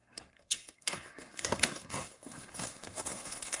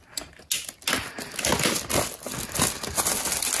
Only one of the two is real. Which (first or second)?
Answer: second